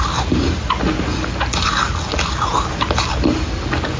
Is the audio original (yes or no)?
yes